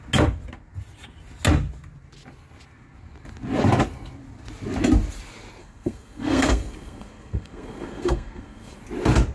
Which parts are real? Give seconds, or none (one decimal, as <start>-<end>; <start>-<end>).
0.0-5.6; 8.8-9.3